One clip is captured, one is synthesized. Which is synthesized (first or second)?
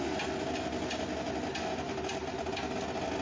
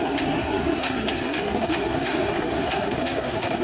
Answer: second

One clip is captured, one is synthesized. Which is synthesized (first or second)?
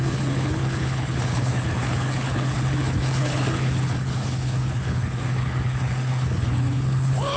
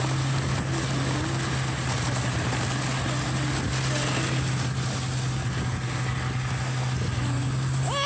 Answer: first